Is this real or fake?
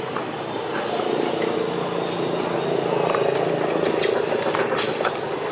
real